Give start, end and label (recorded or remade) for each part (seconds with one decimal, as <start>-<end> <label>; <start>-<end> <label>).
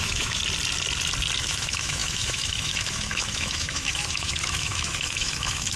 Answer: 0.0-0.4 remade; 0.4-1.4 recorded; 1.4-5.8 remade